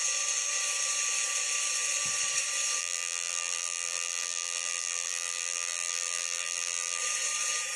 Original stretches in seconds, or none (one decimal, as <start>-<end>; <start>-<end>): 0.0-2.8; 7.0-7.8